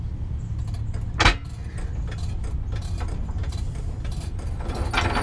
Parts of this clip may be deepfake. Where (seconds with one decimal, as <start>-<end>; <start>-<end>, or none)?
none